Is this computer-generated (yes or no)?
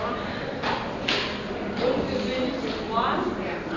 no